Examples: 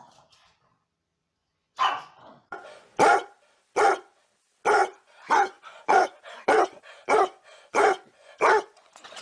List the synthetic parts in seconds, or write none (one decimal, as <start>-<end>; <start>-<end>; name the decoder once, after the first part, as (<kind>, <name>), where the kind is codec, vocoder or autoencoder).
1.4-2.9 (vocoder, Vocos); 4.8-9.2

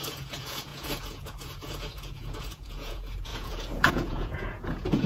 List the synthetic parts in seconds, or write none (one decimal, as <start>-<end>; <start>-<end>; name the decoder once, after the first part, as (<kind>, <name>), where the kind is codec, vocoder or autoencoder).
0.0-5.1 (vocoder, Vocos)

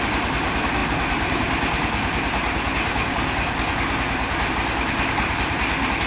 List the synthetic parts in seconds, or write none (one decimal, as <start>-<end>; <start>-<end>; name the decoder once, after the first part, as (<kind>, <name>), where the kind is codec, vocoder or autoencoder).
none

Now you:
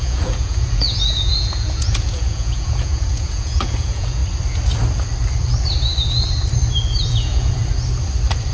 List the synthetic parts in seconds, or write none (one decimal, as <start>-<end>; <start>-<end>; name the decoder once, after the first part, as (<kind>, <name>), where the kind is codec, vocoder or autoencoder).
0.0-4.2 (vocoder, Vocos); 7.1-7.6

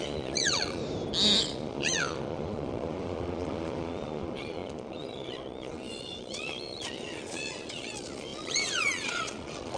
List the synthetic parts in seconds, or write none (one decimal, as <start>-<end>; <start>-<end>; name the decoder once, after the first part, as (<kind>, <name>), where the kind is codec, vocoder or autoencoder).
0.0-0.8 (vocoder, Vocos); 1.4-9.8